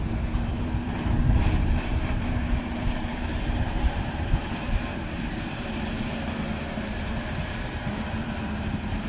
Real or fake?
fake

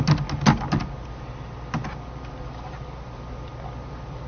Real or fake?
real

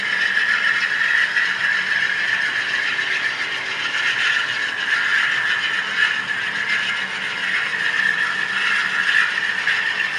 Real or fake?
real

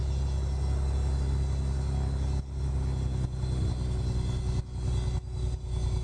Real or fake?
real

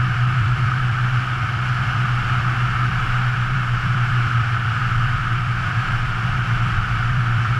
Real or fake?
fake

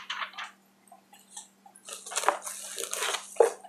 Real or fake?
real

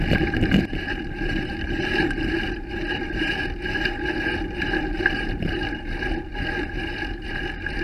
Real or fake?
fake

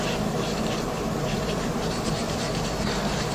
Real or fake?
fake